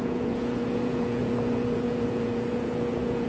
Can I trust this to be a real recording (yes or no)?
no